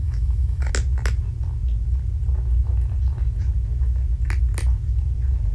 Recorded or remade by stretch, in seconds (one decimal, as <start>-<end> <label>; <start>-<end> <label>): 0.0-0.7 remade; 0.7-5.5 recorded